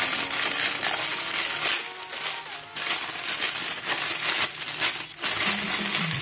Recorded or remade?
recorded